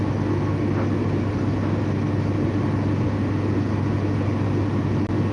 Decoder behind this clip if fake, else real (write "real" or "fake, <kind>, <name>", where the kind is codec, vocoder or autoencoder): real